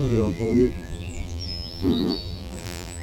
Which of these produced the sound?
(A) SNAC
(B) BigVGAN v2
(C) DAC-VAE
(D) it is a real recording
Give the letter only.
B